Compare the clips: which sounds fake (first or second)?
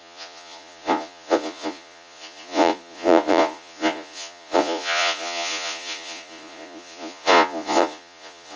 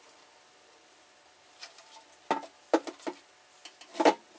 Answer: first